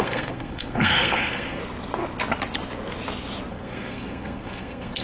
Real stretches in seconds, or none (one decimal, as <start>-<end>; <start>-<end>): 1.6-3.5